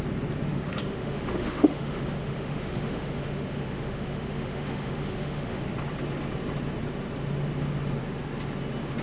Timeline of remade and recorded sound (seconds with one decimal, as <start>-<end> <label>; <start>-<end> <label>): 0.0-0.5 recorded; 0.5-5.6 remade; 5.6-9.0 recorded